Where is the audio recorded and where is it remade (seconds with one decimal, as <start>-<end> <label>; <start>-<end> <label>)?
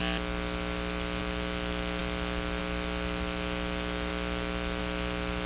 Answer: 0.0-5.5 recorded